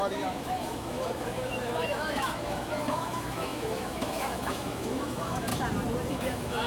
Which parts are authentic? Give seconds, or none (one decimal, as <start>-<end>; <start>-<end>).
5.5-6.1